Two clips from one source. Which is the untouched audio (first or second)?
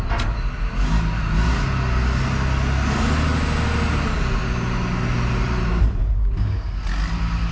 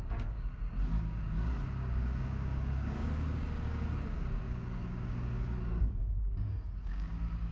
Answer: first